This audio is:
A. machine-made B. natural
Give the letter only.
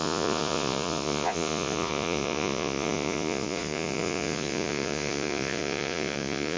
A